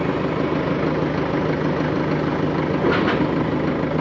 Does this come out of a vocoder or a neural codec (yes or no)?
no